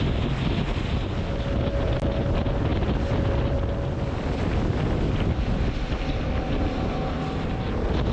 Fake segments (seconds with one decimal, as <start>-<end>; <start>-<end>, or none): none